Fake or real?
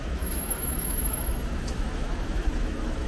fake